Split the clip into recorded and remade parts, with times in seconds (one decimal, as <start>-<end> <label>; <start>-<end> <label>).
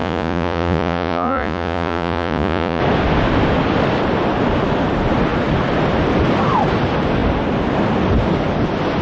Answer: 0.0-2.8 remade; 2.8-9.0 recorded